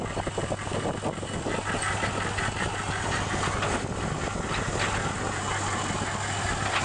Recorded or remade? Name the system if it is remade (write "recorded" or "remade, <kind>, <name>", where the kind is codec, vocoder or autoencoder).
recorded